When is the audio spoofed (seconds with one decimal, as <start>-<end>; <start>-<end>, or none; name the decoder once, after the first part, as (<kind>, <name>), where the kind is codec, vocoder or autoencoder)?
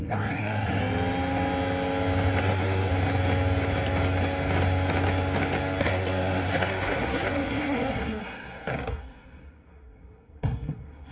0.0-0.8 (codec, SNAC); 2.4-2.9; 5.8-11.1